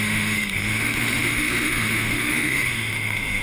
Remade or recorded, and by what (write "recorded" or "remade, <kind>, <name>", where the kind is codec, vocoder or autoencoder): remade, autoencoder, DAC-VAE